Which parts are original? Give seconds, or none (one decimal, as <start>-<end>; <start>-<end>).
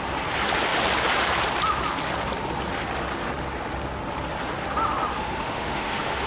0.0-5.2